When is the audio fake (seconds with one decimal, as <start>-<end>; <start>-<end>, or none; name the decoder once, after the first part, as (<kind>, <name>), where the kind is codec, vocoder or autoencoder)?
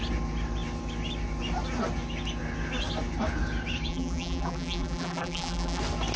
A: 3.9-5.8 (vocoder, BigVGAN v2)